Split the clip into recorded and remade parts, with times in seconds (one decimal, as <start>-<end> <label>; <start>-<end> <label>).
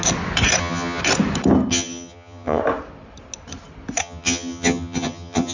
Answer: 0.0-0.6 recorded; 0.6-1.0 remade; 1.0-1.7 recorded; 1.7-2.6 remade; 2.6-4.0 recorded; 4.0-5.5 remade